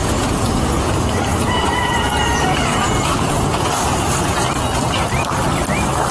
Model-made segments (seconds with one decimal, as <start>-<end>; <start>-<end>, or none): 0.0-0.9; 1.3-4.4